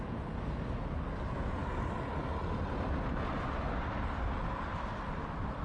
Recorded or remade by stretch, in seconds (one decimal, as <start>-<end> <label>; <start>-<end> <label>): 0.0-5.6 recorded